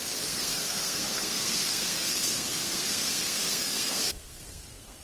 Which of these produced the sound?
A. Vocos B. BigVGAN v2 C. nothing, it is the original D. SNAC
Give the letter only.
D